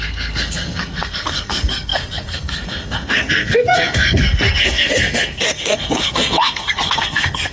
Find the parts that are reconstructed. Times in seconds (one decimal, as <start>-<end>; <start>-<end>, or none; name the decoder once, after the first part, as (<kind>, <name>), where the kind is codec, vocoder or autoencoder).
0.0-7.5 (codec, SNAC)

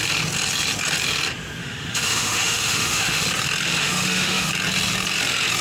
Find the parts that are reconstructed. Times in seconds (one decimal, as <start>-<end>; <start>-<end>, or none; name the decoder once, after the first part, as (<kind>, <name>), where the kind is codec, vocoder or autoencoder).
1.6-3.2 (autoencoder, DAC-VAE); 3.8-4.5

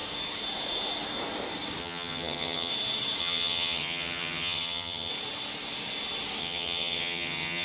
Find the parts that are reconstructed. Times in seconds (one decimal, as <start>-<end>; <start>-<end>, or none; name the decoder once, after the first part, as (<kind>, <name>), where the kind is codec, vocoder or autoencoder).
1.8-2.7 (vocoder, HiFi-GAN); 3.2-5.1; 6.4-7.6

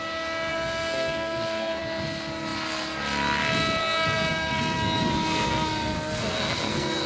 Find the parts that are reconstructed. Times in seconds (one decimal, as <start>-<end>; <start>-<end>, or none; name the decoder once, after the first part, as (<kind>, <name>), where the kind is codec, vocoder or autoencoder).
0.5-1.8 (codec, SNAC); 3.8-7.1

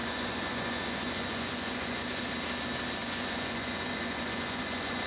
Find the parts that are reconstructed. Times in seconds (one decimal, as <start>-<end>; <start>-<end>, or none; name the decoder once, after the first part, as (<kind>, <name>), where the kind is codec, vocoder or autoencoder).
0.0-2.2 (vocoder, Vocos); 3.0-5.1